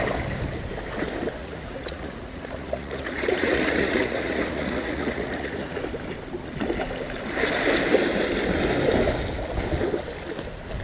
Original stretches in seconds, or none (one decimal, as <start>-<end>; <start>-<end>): 0.0-1.4; 5.8-10.8